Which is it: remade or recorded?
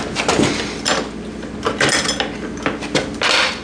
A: recorded